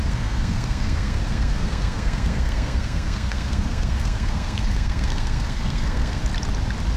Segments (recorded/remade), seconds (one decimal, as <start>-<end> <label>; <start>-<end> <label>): 0.0-6.2 remade; 6.2-7.0 recorded